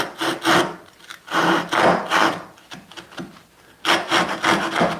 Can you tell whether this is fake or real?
real